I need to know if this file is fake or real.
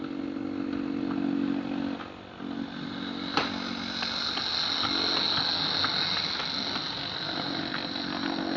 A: real